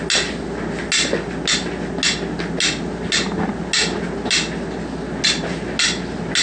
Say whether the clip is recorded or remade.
recorded